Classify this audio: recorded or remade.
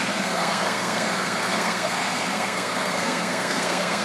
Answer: remade